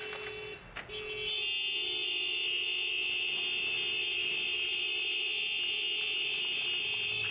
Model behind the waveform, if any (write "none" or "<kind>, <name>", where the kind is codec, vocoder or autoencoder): none